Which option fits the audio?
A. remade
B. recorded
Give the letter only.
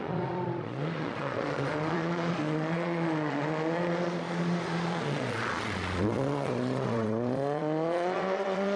A